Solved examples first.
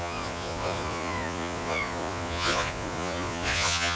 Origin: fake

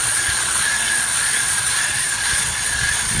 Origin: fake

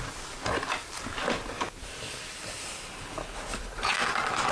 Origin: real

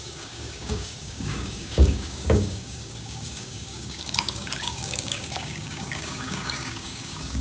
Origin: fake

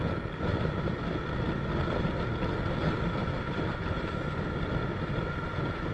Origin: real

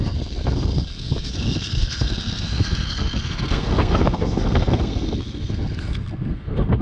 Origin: fake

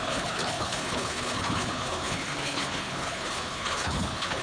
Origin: fake